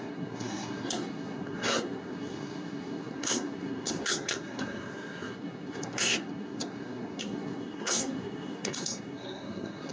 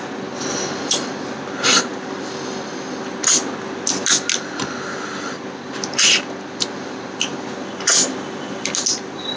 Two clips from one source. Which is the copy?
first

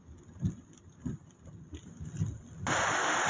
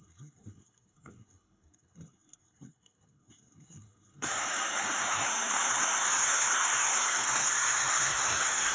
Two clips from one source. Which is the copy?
second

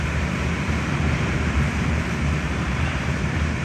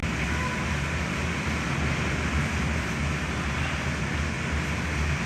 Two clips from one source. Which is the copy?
first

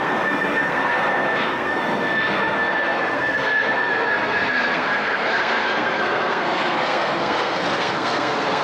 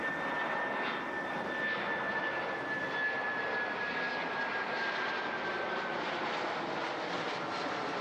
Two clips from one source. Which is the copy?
first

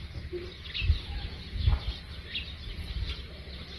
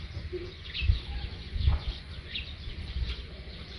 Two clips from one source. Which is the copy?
second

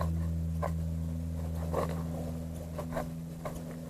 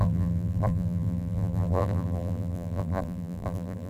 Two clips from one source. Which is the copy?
second